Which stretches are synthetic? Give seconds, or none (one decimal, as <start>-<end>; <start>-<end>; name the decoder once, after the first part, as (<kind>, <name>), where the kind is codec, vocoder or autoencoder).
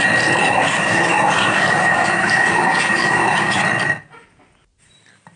0.4-3.6 (codec, DAC)